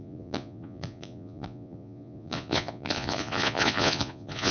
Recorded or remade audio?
remade